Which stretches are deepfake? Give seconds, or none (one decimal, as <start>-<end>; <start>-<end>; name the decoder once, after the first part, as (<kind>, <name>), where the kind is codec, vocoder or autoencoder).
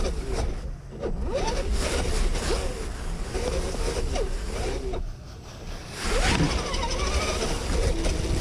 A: none